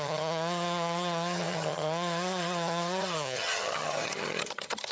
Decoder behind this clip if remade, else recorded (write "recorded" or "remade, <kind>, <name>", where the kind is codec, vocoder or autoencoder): remade, vocoder, HiFi-GAN